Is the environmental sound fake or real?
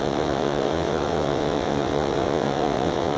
fake